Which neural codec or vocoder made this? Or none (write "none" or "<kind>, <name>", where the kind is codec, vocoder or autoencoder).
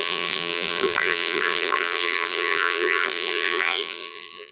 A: vocoder, BigVGAN v2